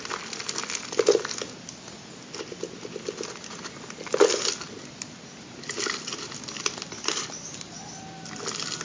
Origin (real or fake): real